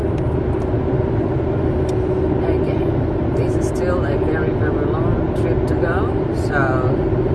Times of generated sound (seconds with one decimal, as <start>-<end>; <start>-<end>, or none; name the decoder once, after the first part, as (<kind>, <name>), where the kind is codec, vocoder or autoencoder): none